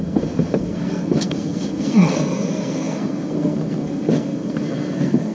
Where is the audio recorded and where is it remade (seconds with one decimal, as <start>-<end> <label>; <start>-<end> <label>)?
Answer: 0.0-5.3 remade